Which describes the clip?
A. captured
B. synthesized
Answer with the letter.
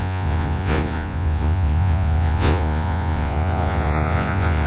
B